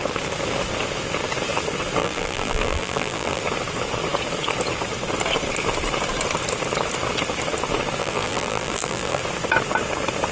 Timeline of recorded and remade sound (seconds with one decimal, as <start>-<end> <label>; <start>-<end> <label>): 0.0-2.0 recorded; 2.0-3.4 remade; 3.4-8.0 recorded; 8.0-9.2 remade; 9.2-10.3 recorded